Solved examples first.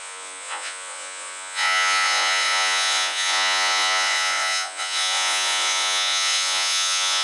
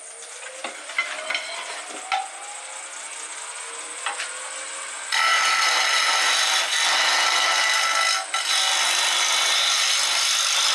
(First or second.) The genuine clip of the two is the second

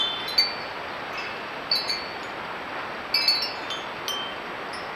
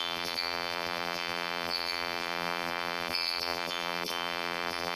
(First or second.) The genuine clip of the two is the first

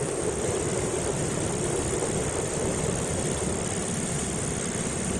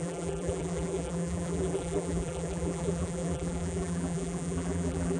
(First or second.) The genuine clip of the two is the first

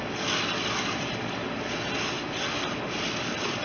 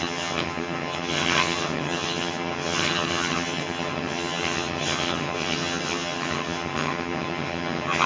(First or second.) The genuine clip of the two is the first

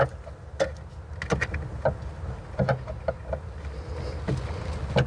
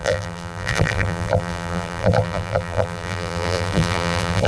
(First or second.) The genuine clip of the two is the first